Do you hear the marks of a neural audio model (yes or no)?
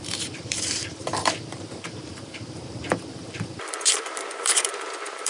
yes